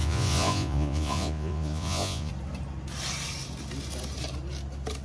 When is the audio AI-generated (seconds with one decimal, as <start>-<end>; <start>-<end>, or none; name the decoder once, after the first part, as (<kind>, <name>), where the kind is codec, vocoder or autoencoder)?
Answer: 0.0-2.3 (vocoder, Vocos)